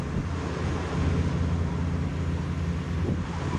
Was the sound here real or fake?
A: real